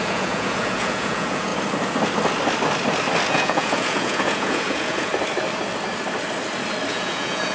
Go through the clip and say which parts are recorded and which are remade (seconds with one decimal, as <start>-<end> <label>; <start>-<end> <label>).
0.0-1.5 remade; 1.5-3.3 recorded; 3.3-5.1 remade; 5.1-6.9 recorded; 6.9-7.5 remade